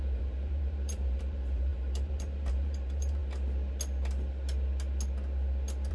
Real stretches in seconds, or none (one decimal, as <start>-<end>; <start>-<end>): 3.2-5.9